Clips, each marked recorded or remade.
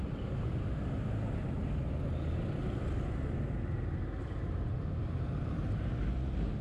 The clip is recorded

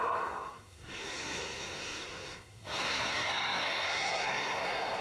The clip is remade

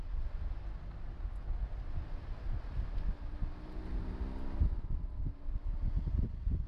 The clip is recorded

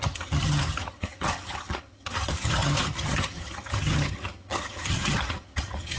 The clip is remade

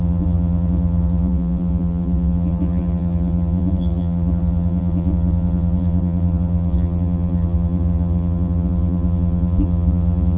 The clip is remade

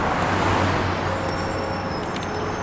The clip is recorded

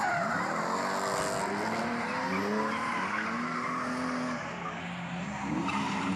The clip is recorded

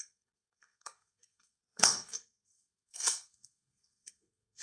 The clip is remade